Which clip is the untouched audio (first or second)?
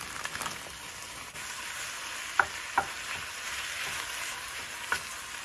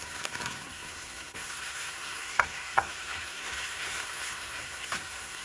first